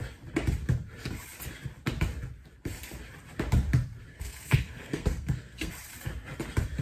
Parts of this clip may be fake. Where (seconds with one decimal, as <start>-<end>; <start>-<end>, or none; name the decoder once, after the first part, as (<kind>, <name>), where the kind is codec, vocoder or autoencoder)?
4.1-5.7 (codec, SNAC)